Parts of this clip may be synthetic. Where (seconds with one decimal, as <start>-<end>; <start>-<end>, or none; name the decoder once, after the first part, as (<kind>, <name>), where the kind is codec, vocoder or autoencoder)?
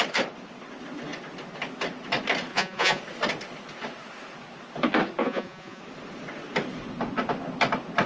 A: 2.5-3.0 (vocoder, Vocos); 5.2-5.8